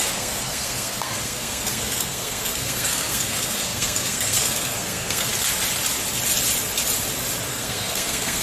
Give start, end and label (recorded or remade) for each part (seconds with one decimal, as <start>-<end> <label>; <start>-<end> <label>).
0.0-5.3 remade; 5.3-7.5 recorded; 7.5-8.4 remade